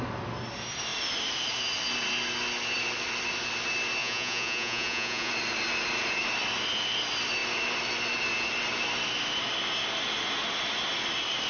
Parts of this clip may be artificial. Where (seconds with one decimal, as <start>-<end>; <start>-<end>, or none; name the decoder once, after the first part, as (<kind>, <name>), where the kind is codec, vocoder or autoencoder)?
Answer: 4.0-5.3 (vocoder, Vocos)